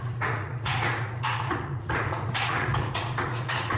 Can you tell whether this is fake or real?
fake